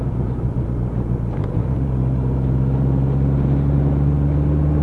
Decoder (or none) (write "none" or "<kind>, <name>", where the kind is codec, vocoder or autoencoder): none